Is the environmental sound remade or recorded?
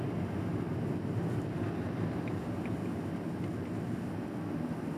recorded